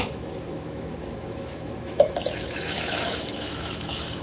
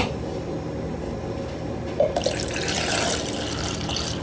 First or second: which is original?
second